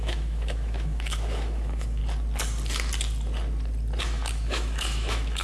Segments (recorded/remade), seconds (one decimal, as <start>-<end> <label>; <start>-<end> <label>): 0.0-2.0 remade; 2.0-4.0 recorded; 4.0-5.4 remade